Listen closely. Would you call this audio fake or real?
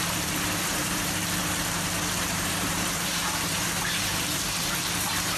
fake